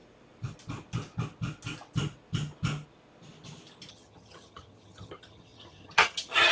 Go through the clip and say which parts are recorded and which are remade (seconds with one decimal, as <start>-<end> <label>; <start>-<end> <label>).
0.0-3.9 recorded; 3.9-6.5 remade